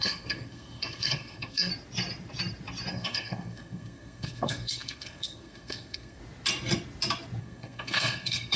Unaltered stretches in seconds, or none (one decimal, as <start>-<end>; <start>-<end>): 1.7-2.9; 6.2-7.4